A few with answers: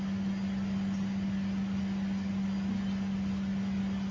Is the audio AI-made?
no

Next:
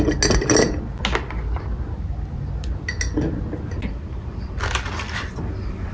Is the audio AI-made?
no